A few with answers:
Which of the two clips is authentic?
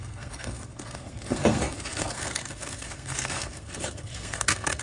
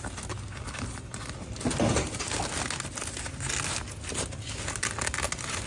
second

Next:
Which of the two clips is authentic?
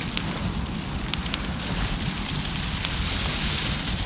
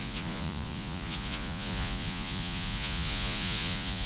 first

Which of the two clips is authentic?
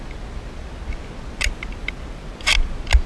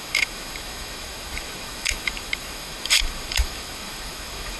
first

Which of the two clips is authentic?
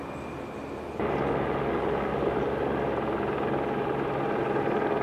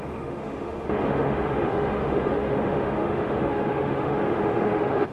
first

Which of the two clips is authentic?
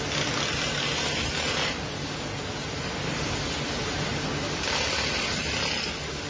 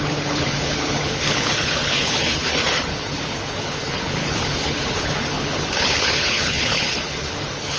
first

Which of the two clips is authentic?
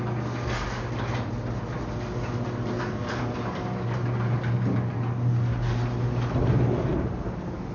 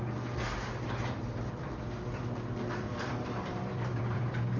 first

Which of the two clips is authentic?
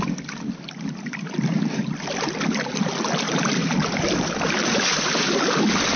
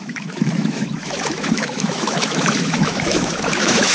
first